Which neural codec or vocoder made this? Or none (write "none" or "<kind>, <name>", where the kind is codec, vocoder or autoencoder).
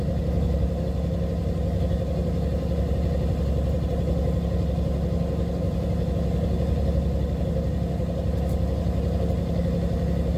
none